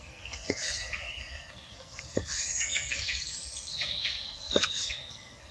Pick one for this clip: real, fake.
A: fake